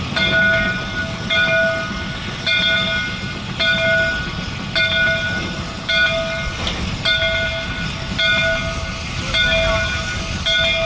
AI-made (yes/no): no